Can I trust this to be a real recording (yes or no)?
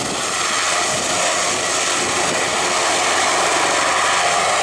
yes